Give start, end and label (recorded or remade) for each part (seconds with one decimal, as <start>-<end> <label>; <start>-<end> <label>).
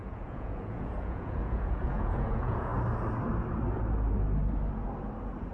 0.0-2.7 remade; 2.7-5.5 recorded